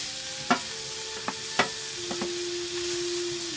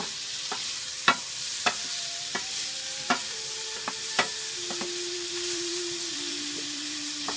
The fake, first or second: second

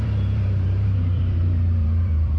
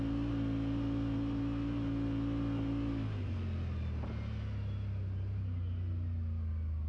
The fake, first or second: first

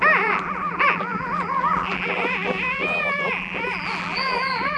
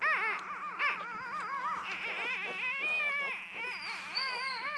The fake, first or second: first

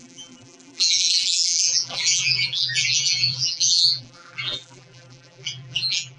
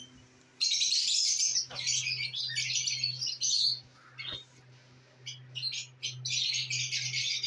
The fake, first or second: first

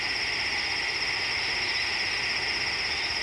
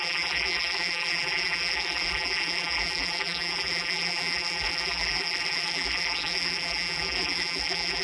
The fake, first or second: second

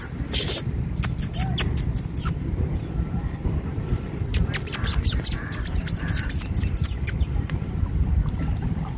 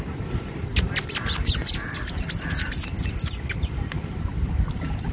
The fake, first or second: first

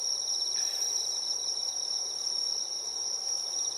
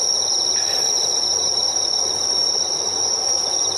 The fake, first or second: first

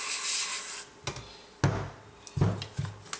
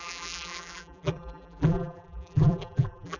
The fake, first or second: second